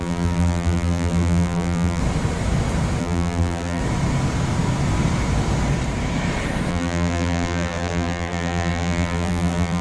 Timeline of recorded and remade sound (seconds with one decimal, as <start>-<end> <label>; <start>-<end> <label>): 0.0-2.0 remade; 2.0-3.0 recorded; 3.0-3.8 remade; 3.8-6.7 recorded; 6.7-9.8 remade